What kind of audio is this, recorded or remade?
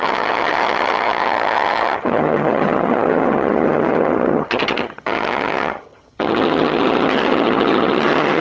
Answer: remade